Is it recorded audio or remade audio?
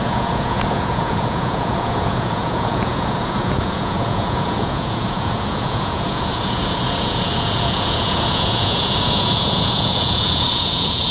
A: remade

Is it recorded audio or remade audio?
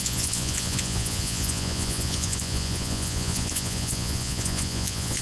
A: remade